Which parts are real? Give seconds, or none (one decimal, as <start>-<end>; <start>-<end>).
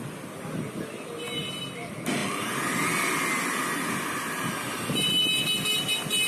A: 0.0-6.3